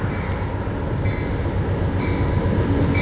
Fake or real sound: real